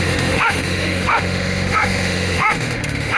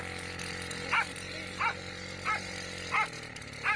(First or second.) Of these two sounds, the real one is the second